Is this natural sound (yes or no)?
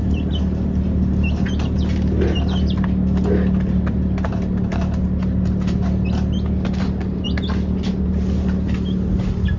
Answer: yes